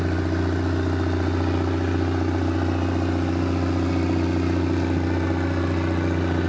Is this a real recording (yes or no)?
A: yes